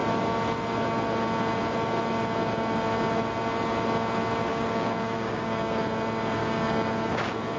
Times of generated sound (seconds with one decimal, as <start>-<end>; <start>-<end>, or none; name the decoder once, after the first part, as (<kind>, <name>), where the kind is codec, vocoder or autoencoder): 4.5-5.8 (codec, DAC); 6.4-7.1